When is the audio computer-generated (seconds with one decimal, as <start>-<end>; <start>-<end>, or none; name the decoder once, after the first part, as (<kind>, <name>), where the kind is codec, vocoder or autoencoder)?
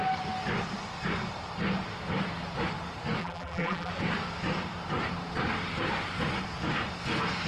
3.2-3.9 (vocoder, BigVGAN v2)